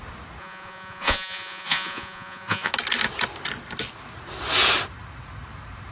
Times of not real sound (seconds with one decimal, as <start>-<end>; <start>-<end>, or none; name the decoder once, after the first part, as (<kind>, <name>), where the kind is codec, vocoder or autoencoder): 0.4-2.7 (vocoder, Vocos)